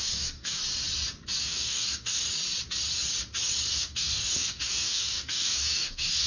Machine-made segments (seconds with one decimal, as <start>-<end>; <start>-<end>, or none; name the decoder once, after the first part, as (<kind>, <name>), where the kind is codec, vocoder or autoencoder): 0.0-0.6 (codec, DAC); 1.4-2.2; 3.7-6.3